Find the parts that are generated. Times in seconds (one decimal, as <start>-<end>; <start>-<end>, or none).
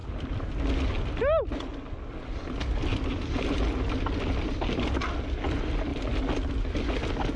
0.0-0.7; 2.9-3.6